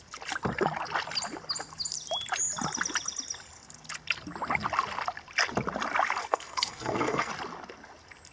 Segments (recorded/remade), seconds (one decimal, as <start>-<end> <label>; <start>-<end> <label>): 0.0-6.2 recorded; 6.2-7.3 remade; 7.3-8.3 recorded